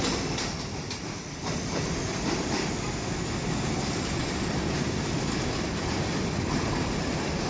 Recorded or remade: recorded